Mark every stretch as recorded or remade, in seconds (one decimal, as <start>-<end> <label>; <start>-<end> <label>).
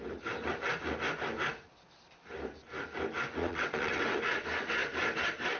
0.0-3.4 recorded; 3.4-4.2 remade; 4.2-5.6 recorded